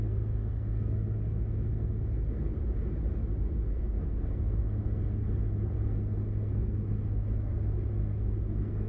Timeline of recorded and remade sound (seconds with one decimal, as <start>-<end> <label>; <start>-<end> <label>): 0.0-2.5 remade; 2.5-3.4 recorded; 3.4-8.9 remade